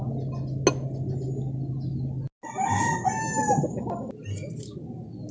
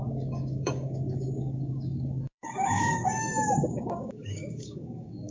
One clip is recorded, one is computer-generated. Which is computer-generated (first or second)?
second